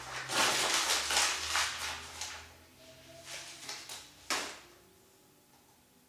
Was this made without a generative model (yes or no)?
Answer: yes